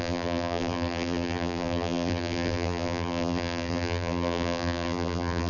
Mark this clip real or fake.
fake